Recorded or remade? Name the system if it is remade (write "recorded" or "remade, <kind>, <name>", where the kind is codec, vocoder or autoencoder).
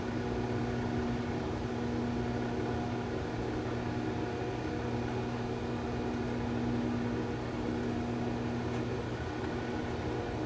recorded